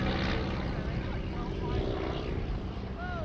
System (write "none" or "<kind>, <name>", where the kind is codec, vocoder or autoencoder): none